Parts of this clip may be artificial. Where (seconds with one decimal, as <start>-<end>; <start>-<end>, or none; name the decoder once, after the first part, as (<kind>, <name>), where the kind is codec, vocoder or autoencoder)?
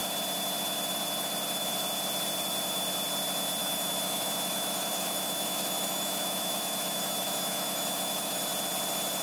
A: 3.6-8.4 (autoencoder, DAC-VAE)